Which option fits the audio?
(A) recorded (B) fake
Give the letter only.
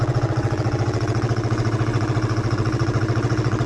B